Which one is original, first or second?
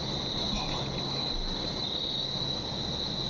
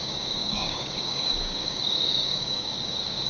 first